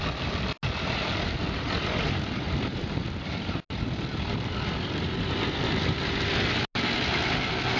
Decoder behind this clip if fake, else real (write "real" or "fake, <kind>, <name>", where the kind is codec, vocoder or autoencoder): real